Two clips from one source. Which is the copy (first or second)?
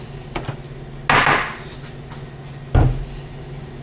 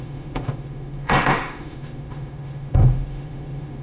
second